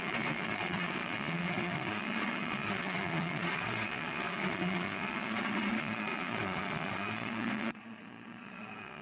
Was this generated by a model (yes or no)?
yes